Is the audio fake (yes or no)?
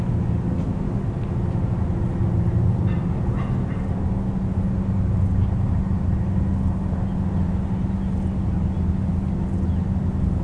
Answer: no